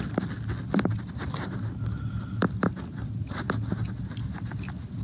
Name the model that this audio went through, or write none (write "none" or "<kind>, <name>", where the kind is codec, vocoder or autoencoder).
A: none